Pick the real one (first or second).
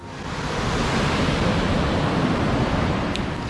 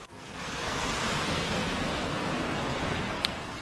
first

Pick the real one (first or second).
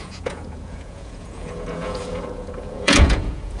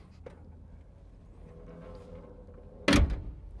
second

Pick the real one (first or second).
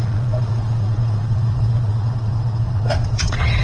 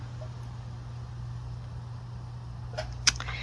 second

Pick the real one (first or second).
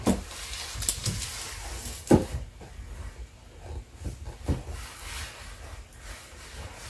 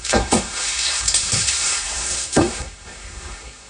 first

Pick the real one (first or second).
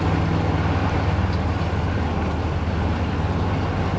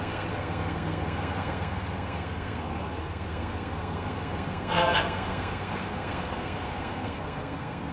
first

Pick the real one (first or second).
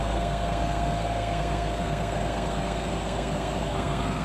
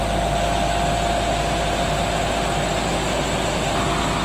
second